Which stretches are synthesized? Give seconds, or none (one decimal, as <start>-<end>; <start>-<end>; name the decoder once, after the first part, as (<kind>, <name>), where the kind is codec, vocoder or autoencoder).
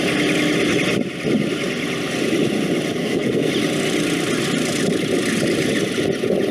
3.0-3.5 (codec, SNAC)